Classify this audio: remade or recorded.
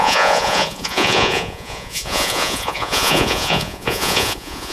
remade